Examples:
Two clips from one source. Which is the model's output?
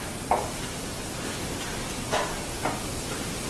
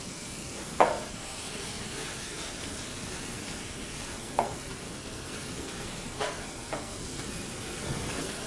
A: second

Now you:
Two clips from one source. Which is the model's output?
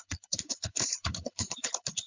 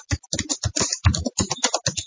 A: first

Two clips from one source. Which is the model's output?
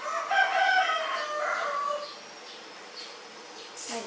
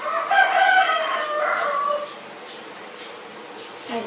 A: second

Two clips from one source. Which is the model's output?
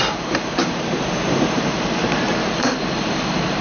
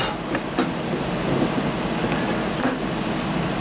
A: first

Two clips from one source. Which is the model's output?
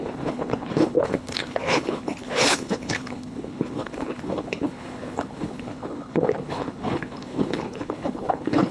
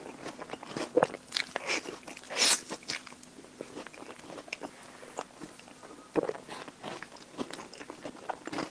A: first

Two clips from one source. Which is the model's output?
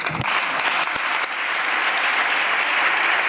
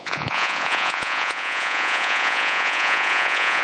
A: second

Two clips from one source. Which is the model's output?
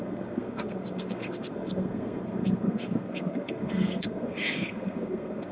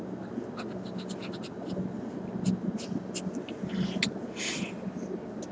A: first